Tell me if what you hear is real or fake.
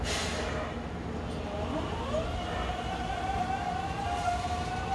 real